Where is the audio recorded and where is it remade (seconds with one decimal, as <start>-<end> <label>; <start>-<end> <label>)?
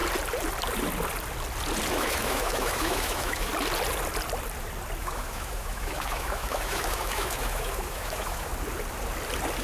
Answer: 0.0-1.9 recorded; 1.9-3.5 remade; 3.5-5.0 recorded; 5.0-8.5 remade; 8.5-9.6 recorded